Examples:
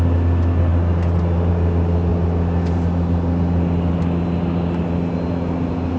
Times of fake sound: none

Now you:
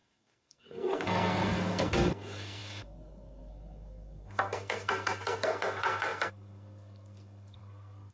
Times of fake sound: 0.0-8.1 (codec, SNAC)

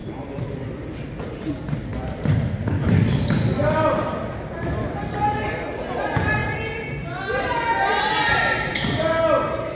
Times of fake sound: 0.0-1.5 (vocoder, BigVGAN v2); 1.9-3.3